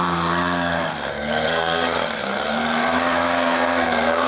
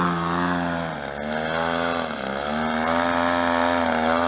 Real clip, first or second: second